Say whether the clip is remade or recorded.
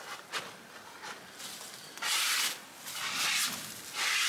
recorded